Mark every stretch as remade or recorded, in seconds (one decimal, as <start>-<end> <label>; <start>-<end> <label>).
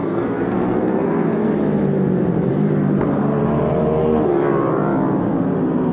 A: 0.0-1.5 remade; 1.5-5.9 recorded